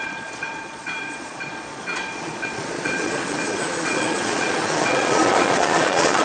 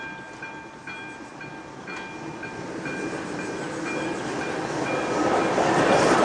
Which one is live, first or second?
second